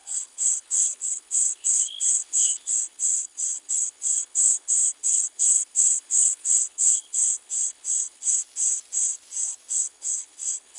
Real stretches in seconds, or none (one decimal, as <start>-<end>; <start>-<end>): 8.3-9.7